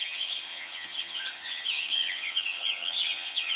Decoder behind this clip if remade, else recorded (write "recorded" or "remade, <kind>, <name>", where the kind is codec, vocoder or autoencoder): remade, vocoder, HiFi-GAN